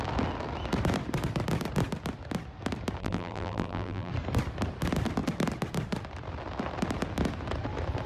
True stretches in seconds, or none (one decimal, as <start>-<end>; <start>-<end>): 0.0-3.0; 4.1-8.1